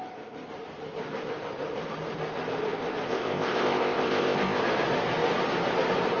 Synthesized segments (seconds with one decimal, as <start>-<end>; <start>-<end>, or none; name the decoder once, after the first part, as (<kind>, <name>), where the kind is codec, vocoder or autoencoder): 3.1-4.6 (codec, ZipCodec)